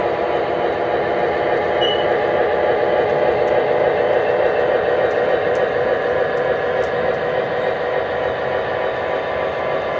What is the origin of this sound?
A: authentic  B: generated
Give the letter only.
A